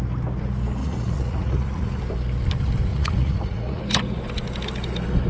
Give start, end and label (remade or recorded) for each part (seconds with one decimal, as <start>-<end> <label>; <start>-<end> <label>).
0.0-0.8 recorded; 0.8-2.0 remade; 2.0-2.9 recorded; 2.9-3.8 remade; 3.8-5.3 recorded